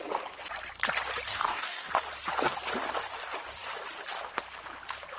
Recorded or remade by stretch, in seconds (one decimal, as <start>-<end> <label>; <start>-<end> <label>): 0.0-1.3 recorded; 1.3-1.9 remade; 1.9-5.2 recorded